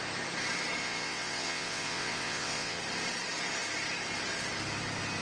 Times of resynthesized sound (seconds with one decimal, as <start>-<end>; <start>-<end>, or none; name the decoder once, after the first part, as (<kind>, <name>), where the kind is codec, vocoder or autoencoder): 0.8-2.8 (vocoder, WaveNeXt)

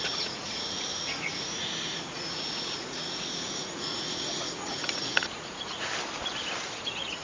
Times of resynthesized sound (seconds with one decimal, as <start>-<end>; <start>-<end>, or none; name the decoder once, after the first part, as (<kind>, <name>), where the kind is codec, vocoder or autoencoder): 0.0-5.9 (vocoder, Vocos); 6.8-7.2

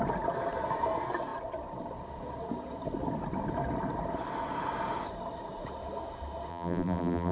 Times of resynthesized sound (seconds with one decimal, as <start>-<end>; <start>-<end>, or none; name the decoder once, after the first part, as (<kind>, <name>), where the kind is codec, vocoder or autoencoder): 6.5-7.3 (vocoder, BigVGAN v2)

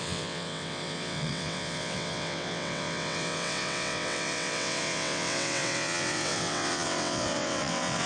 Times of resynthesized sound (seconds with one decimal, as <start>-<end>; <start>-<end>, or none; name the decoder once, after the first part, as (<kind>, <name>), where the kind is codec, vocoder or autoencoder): 0.0-8.1 (vocoder, WaveNeXt)